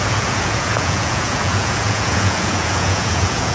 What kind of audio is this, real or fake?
fake